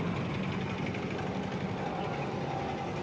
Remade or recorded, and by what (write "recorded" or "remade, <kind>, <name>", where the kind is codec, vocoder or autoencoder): recorded